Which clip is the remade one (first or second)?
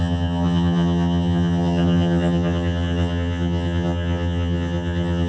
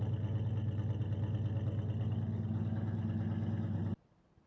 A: first